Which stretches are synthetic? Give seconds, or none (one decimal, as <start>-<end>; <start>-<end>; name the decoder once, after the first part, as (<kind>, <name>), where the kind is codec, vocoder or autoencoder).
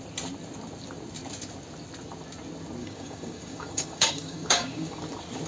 2.8-5.0 (codec, DAC)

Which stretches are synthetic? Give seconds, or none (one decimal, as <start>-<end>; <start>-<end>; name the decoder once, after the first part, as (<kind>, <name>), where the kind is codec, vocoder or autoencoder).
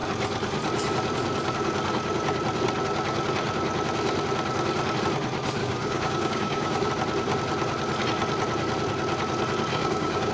5.6-6.9 (codec, DAC); 9.7-10.3